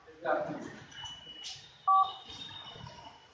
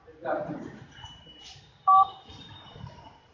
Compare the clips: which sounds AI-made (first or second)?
second